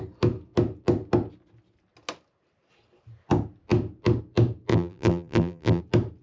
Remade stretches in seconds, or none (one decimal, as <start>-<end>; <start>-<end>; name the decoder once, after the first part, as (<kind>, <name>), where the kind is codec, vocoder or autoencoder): 4.7-5.8 (vocoder, BigVGAN v2)